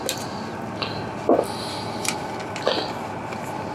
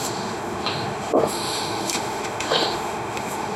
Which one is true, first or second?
first